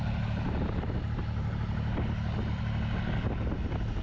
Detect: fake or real real